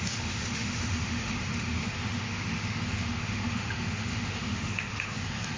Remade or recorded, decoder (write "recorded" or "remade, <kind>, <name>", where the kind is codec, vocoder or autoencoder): remade, autoencoder, DAC-VAE